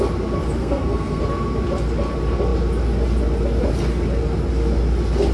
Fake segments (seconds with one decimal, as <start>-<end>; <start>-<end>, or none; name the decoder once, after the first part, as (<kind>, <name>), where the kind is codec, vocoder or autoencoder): 0.6-1.2 (codec, SNAC)